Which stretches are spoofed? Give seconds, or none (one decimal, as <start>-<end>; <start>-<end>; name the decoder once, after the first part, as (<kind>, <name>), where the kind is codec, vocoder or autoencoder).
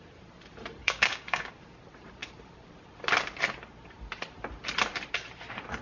0.8-1.5 (codec, DAC)